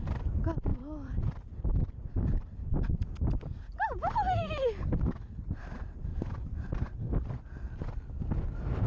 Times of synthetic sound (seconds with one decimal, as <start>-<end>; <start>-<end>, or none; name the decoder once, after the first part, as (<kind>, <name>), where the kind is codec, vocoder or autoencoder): 0.7-3.0 (vocoder, BigVGAN v2); 6.1-7.2